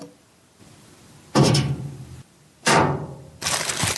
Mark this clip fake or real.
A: fake